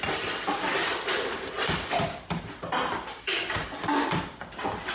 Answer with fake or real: real